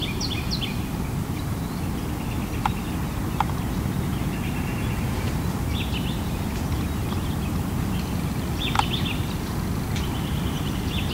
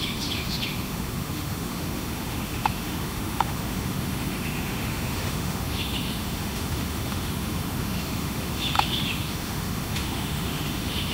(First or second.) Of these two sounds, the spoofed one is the second